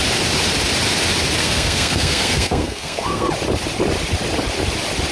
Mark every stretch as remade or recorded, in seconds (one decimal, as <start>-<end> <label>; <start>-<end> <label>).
0.0-1.4 recorded; 1.4-3.3 remade; 3.3-5.1 recorded